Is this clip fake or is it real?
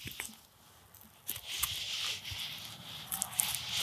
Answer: real